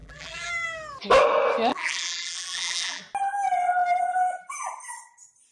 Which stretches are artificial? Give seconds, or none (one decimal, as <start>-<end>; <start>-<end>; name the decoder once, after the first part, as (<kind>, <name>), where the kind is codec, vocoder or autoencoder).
0.0-0.5 (vocoder, BigVGAN v2); 1.7-3.0